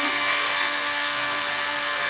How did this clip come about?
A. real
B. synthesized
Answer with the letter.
B